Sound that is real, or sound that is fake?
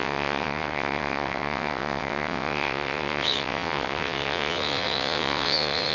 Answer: fake